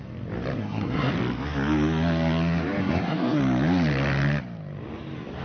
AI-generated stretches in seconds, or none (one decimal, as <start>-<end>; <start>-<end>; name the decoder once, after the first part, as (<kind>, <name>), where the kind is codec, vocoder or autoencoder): 0.6-1.1 (codec, SNAC); 2.8-3.4

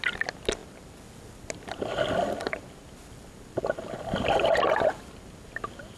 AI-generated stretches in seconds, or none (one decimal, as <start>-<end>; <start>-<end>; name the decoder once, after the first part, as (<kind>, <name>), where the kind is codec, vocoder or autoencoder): none

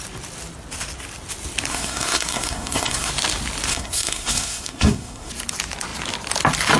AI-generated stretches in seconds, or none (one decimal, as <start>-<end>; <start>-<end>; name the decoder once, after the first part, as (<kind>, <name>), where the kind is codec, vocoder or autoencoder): 1.7-3.1 (codec, SNAC); 3.7-5.3

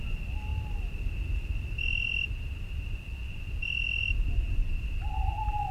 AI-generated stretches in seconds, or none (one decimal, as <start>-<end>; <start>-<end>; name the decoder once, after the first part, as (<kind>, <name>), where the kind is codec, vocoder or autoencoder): none